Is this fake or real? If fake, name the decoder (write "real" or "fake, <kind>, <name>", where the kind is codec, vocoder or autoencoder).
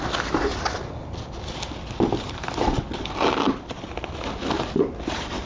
real